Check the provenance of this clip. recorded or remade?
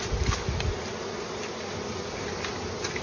recorded